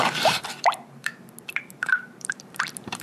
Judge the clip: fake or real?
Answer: fake